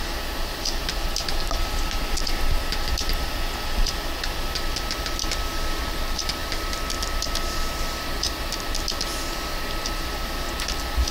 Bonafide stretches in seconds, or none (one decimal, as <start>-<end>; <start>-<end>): 0.0-11.1